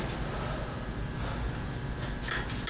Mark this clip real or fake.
real